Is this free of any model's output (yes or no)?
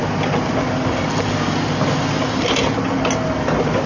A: yes